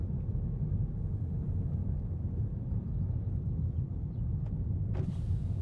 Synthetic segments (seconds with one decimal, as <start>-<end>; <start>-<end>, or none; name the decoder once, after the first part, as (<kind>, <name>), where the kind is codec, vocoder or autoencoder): 0.0-0.7 (vocoder, BigVGAN v2); 1.8-5.6